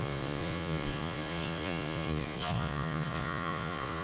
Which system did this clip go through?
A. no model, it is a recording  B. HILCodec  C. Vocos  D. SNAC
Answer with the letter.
C